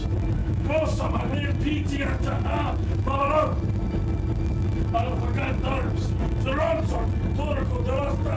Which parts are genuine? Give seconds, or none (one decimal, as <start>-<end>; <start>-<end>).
0.0-0.4; 1.1-8.4